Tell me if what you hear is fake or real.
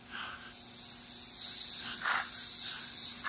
real